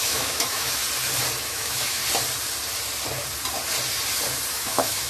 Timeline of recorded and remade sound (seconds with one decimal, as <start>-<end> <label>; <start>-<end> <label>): 0.0-0.8 remade; 0.8-1.5 recorded; 1.5-2.0 remade; 2.0-4.5 recorded; 4.5-5.1 remade